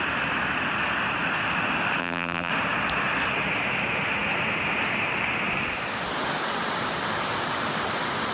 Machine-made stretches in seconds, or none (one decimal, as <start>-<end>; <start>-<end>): 2.0-2.5